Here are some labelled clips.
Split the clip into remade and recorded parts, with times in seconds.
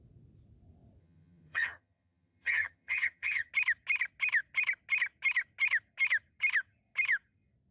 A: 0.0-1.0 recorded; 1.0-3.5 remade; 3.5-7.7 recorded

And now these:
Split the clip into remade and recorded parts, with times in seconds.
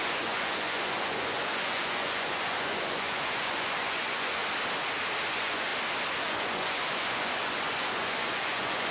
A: 0.0-4.4 remade; 4.4-5.3 recorded; 5.3-5.7 remade; 5.7-6.2 recorded; 6.2-8.9 remade